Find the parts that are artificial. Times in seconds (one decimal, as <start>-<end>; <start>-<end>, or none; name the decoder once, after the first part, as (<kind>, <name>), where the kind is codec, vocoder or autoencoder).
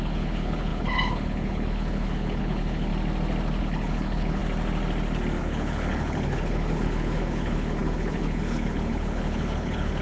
0.0-2.9 (codec, HILCodec); 3.6-4.4; 5.4-10.0